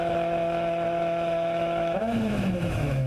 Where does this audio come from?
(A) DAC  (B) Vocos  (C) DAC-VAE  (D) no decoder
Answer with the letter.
C